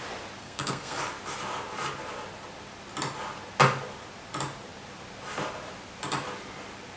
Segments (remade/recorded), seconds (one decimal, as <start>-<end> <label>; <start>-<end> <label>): 0.0-0.4 recorded; 0.4-1.0 remade; 1.0-7.0 recorded